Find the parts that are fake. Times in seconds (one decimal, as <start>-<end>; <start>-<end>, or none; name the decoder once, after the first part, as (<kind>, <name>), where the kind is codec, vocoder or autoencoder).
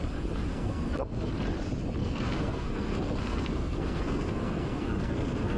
0.5-1.3 (codec, SNAC); 2.0-5.6